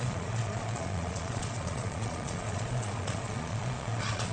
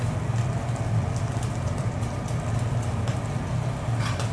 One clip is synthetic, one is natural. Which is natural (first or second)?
second